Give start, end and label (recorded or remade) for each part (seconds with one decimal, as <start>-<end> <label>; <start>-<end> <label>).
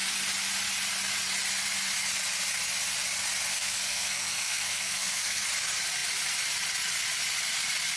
0.0-3.5 recorded; 3.5-5.4 remade; 5.4-8.0 recorded